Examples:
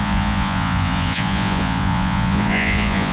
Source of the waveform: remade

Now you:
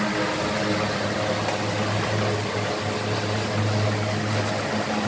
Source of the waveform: recorded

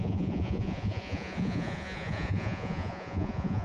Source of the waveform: remade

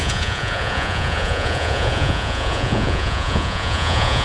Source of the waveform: remade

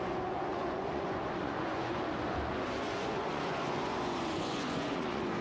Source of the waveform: remade